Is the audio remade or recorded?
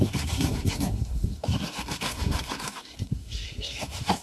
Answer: remade